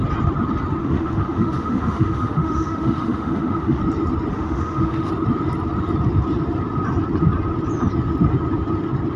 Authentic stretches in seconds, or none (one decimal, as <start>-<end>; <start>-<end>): 0.0-0.8; 3.8-4.3; 5.1-9.2